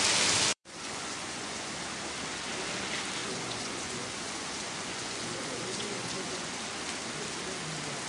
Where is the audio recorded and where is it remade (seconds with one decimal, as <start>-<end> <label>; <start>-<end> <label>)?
0.0-0.5 recorded; 0.5-1.7 remade; 1.7-3.2 recorded; 3.2-6.6 remade; 6.6-8.1 recorded